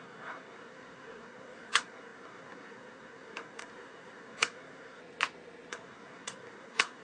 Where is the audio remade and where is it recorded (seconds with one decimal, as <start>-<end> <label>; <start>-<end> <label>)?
0.0-5.0 remade; 5.0-5.7 recorded; 5.7-7.0 remade

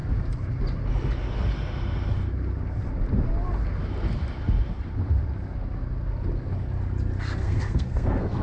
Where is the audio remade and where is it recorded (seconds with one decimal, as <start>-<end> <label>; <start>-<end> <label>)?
0.0-7.4 recorded; 7.4-8.4 remade

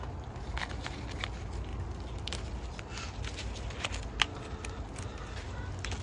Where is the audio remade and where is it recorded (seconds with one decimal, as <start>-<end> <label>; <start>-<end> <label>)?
0.0-6.0 recorded

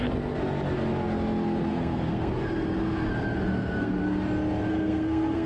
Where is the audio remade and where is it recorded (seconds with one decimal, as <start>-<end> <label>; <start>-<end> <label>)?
0.0-1.7 recorded; 1.7-2.3 remade; 2.3-3.5 recorded; 3.5-4.0 remade; 4.0-4.7 recorded; 4.7-5.5 remade

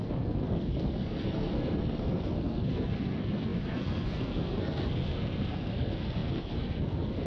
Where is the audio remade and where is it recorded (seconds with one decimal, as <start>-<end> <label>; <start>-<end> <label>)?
0.0-7.3 remade

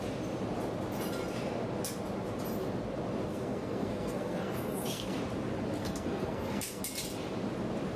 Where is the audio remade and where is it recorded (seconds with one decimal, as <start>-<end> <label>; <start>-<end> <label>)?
0.0-3.3 recorded; 3.3-5.2 remade; 5.2-5.8 recorded; 5.8-6.8 remade; 6.8-8.0 recorded